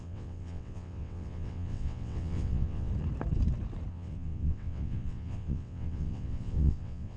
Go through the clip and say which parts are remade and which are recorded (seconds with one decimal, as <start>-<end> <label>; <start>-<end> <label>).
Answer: 0.0-2.9 remade; 2.9-3.9 recorded; 3.9-7.2 remade